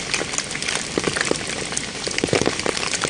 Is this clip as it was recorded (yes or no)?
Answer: yes